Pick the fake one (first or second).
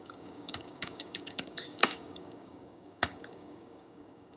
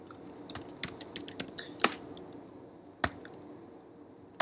first